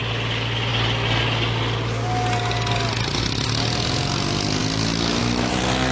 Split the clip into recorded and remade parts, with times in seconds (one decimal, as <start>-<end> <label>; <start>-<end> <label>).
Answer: 0.0-5.9 recorded